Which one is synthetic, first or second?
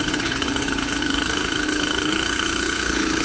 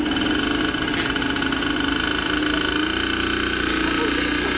first